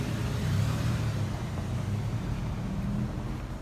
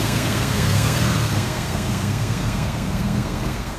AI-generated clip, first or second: second